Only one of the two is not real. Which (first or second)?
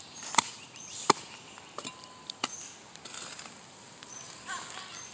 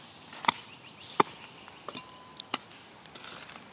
second